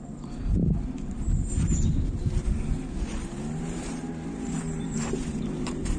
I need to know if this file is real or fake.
fake